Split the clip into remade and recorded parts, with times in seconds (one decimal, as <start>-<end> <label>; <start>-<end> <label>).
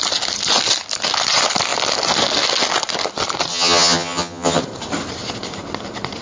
0.0-3.5 recorded; 3.5-4.6 remade; 4.6-6.2 recorded